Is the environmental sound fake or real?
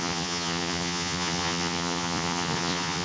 fake